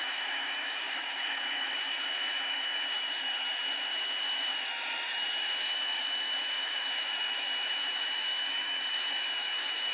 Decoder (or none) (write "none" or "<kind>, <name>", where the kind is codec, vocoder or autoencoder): autoencoder, DAC-VAE